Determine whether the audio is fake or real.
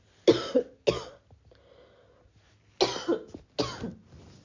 real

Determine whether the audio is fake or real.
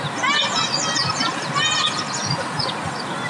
real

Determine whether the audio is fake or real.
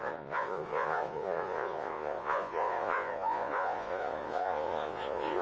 fake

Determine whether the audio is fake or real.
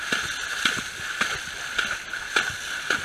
real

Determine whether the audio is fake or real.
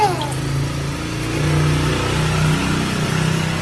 real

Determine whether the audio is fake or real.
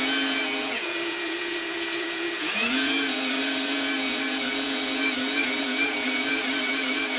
fake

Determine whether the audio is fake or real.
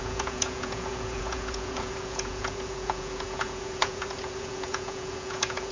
fake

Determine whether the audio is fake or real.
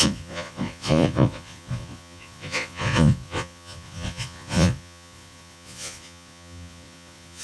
fake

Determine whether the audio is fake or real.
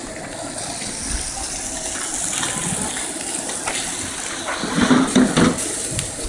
real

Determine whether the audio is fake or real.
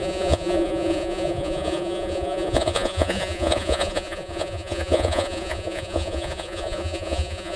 fake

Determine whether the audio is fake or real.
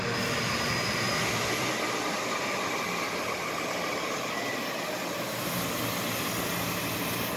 real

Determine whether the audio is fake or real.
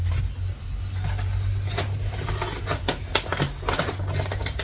real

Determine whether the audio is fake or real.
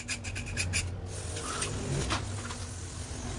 real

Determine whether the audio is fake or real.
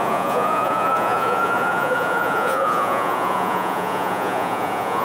fake